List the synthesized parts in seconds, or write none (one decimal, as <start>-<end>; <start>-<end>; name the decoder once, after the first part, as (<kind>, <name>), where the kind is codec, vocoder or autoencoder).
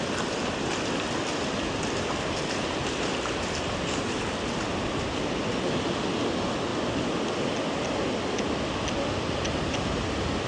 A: none